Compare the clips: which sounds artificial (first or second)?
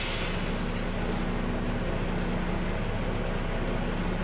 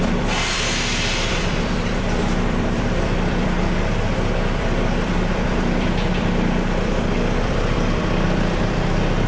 second